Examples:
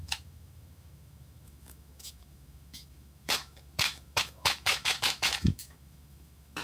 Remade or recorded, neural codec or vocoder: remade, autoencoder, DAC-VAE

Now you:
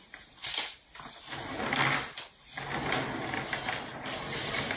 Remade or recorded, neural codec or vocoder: recorded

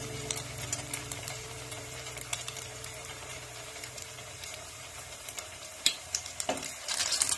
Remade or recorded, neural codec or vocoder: remade, vocoder, BigVGAN v2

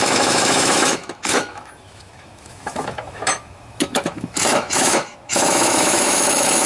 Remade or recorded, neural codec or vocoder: remade, autoencoder, DAC-VAE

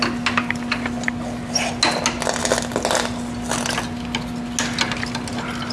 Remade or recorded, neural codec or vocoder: recorded